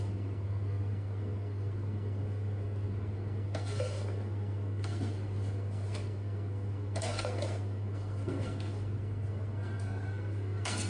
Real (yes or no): no